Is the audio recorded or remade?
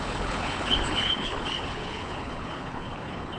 remade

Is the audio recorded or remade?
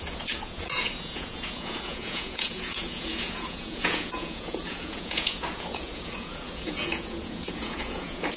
remade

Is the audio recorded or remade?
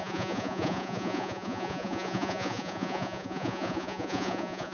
remade